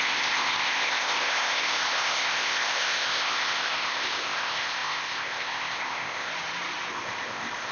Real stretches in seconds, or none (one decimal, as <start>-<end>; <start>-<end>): 6.3-6.9